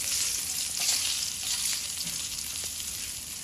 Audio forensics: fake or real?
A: fake